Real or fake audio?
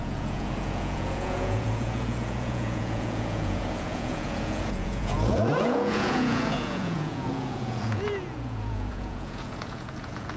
fake